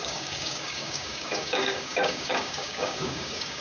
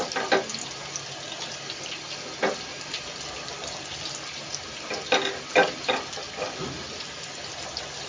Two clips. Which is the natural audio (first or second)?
second